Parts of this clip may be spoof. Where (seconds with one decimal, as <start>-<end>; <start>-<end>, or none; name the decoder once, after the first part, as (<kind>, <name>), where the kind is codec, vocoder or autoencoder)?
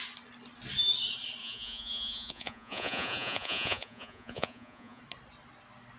1.4-5.0 (vocoder, Vocos)